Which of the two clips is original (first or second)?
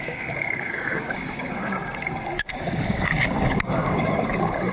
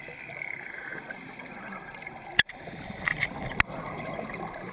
second